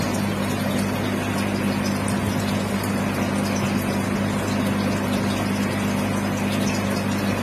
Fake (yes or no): no